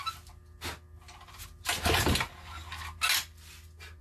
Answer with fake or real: real